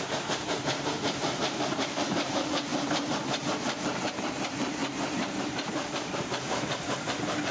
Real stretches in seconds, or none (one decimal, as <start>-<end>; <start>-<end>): 2.7-3.4; 4.8-5.4